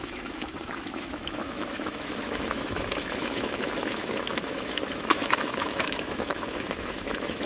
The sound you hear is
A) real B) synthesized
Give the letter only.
B